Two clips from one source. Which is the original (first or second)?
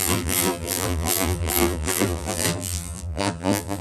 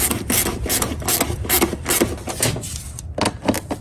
second